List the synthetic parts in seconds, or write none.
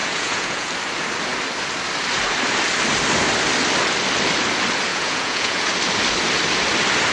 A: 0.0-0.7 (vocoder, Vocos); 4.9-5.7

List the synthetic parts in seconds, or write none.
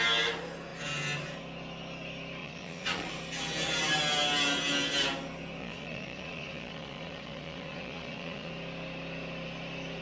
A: 2.4-3.1 (vocoder, Vocos); 5.6-8.5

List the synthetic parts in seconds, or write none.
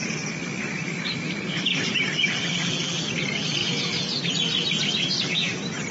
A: 3.6-4.3 (vocoder, Vocos)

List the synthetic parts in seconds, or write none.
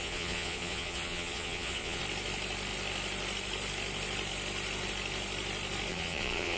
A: 0.0-2.0 (vocoder, Vocos); 5.9-6.6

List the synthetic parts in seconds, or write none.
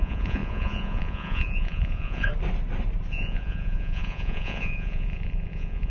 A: 0.0-2.3 (vocoder, Vocos); 3.1-5.9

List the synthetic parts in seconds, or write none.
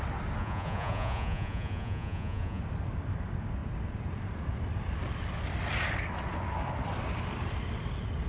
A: 0.4-2.6 (vocoder, Vocos)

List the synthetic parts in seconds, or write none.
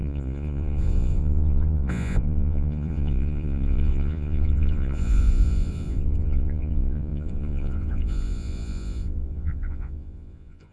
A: 0.0-10.7 (vocoder, Vocos)